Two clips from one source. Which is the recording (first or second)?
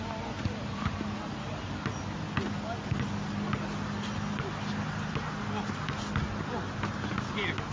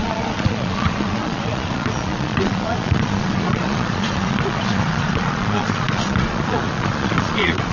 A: first